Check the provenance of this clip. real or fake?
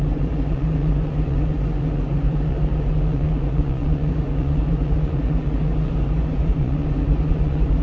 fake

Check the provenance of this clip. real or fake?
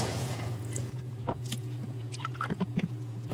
fake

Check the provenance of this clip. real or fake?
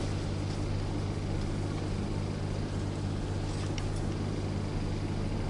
real